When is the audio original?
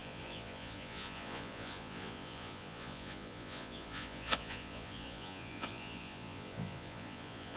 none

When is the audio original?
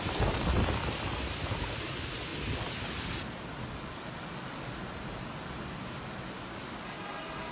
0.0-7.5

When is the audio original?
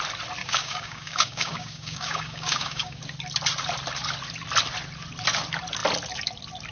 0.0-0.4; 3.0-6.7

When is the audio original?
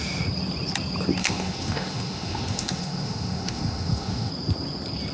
0.0-1.2; 4.3-5.1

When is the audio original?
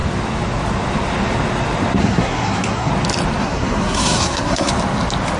0.0-2.0; 2.9-3.4; 4.7-5.4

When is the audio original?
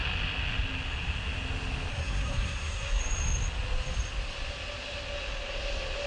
0.0-1.9; 3.0-6.1